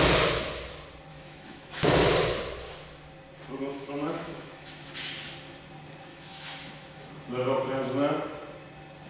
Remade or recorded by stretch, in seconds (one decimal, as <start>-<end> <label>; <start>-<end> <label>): 0.0-1.1 recorded; 1.1-1.9 remade; 1.9-3.7 recorded; 3.7-4.9 remade; 4.9-6.1 recorded; 6.1-7.1 remade; 7.1-9.1 recorded